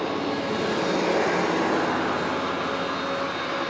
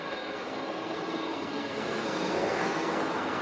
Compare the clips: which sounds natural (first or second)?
first